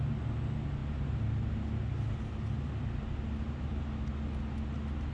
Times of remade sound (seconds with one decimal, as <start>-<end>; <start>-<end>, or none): none